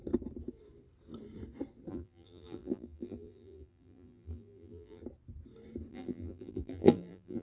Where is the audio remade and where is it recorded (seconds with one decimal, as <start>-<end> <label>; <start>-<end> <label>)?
0.0-1.9 recorded; 1.9-5.0 remade; 5.0-5.9 recorded; 5.9-7.4 remade